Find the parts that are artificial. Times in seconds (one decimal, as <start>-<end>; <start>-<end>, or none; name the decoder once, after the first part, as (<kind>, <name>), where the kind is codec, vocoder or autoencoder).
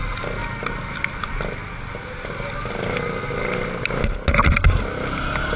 none